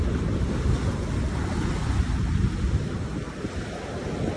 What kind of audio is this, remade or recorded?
recorded